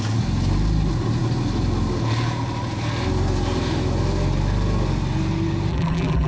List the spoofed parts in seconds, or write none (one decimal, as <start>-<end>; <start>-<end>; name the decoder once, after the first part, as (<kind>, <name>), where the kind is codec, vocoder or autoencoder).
5.7-6.3 (vocoder, BigVGAN v2)